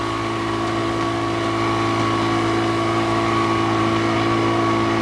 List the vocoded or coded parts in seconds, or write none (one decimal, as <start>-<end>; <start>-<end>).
none